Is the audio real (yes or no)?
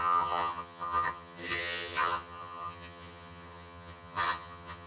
no